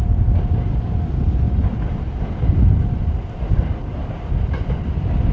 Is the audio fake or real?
real